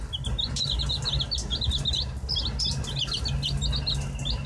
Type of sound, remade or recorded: recorded